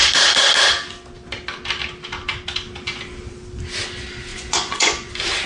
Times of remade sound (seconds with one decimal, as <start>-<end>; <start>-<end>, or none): 4.3-5.1